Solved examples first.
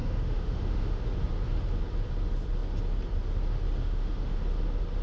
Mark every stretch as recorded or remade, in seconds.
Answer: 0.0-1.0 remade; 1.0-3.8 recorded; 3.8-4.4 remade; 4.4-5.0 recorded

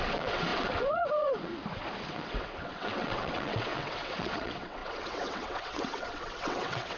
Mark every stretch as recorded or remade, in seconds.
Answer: 0.0-1.5 remade; 1.5-2.1 recorded; 2.1-7.0 remade

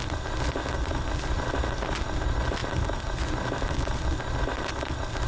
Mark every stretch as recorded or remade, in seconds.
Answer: 0.0-5.3 recorded

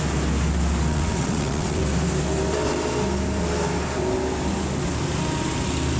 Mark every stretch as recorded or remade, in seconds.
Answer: 0.0-0.9 recorded; 0.9-1.8 remade; 1.8-6.0 recorded